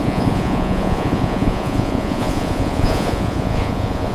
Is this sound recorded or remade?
remade